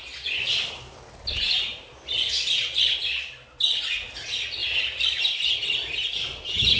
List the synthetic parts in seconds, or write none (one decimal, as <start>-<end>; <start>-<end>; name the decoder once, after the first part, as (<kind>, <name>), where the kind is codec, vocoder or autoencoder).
none